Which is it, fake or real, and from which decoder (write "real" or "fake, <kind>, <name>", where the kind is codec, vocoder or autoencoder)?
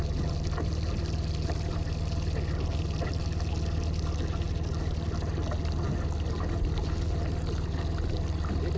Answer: real